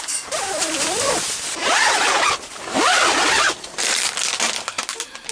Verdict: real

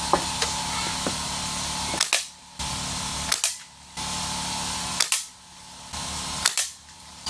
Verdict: real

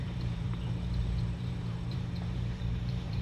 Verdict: fake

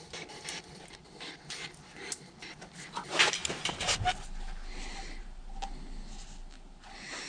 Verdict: real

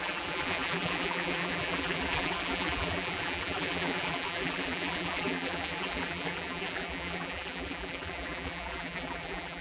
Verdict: fake